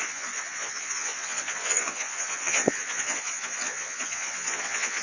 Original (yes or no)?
no